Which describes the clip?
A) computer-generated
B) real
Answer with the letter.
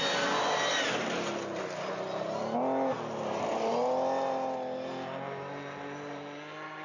B